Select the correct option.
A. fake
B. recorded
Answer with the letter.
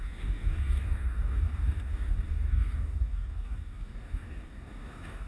A